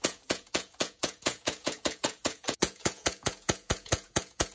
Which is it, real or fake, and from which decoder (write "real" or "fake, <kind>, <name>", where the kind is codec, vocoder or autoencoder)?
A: fake, vocoder, Vocos